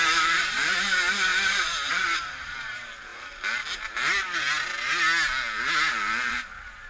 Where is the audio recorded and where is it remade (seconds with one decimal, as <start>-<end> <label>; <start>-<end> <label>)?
0.0-1.3 remade; 1.3-1.9 recorded; 1.9-3.1 remade; 3.1-6.3 recorded; 6.3-6.9 remade